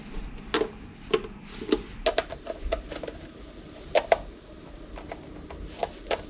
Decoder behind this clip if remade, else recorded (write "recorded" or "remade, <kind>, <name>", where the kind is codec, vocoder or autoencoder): recorded